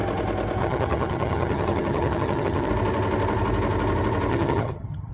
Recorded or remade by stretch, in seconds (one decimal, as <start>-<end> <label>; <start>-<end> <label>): 0.0-0.6 recorded; 0.6-2.7 remade; 2.7-4.3 recorded; 4.3-5.1 remade